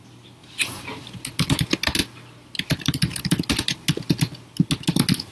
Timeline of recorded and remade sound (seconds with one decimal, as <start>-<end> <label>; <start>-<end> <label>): 0.0-5.3 recorded